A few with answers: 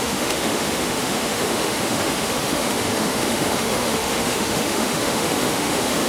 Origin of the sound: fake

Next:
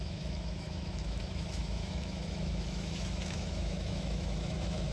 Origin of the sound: fake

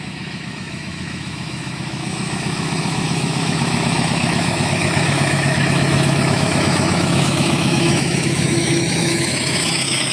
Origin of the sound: fake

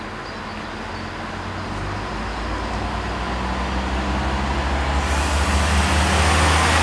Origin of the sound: real